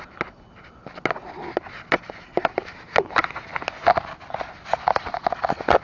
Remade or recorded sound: recorded